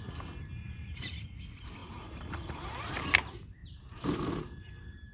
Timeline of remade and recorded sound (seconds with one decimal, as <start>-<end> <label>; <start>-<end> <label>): 0.0-0.5 recorded; 0.5-1.1 remade; 1.1-1.8 recorded; 1.8-2.8 remade; 2.8-3.6 recorded; 3.6-4.5 remade; 4.5-5.1 recorded